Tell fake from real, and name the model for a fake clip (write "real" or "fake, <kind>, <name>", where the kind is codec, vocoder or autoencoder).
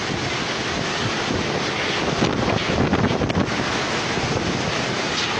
real